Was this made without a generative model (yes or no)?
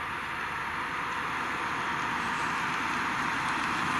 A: yes